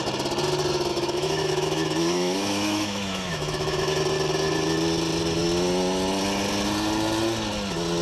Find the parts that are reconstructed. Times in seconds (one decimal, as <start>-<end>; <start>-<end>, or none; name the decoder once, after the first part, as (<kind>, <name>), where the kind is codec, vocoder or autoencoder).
0.9-4.0 (autoencoder, DAC-VAE)